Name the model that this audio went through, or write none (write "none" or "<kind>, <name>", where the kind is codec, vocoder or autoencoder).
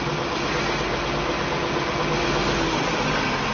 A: none